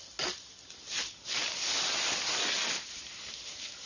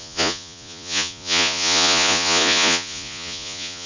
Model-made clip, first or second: second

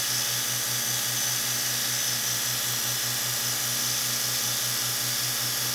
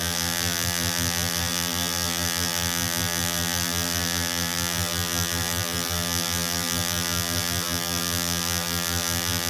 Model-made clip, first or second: second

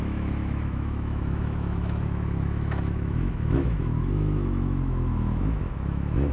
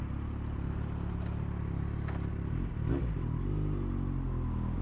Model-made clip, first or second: first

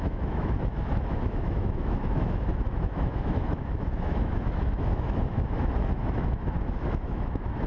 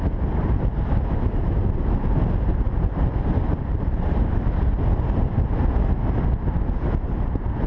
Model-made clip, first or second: first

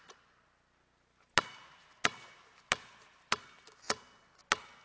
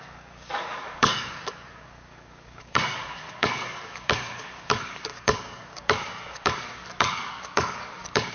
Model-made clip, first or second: second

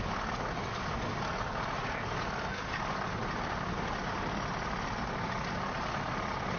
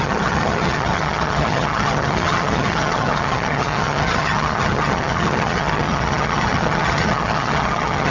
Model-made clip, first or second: second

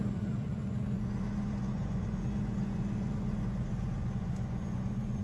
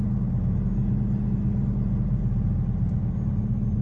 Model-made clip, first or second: first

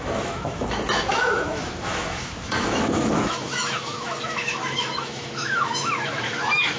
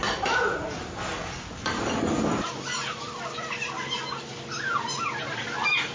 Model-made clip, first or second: first